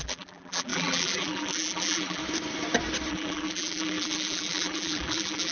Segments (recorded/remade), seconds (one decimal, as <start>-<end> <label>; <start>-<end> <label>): 0.0-2.2 remade; 2.2-3.1 recorded; 3.1-5.5 remade